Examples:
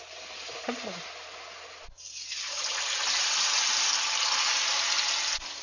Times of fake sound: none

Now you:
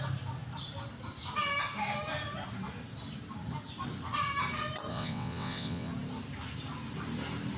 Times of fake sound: 4.9-5.9 (vocoder, WaveNeXt)

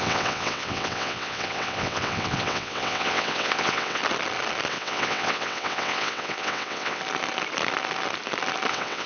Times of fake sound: 0.0-4.0 (vocoder, WaveNeXt); 4.7-7.0; 8.7-9.1

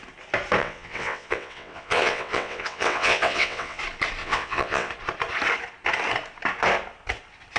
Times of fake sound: 0.6-3.8 (vocoder, WaveNeXt); 4.2-4.9